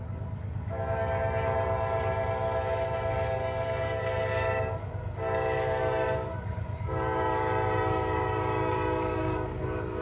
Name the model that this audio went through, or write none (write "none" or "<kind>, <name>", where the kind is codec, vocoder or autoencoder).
codec, DAC